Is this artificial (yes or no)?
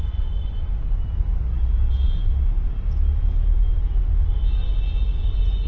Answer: no